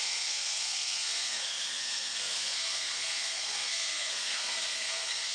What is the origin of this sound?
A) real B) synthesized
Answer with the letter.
B